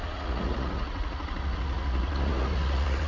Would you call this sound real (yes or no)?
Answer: no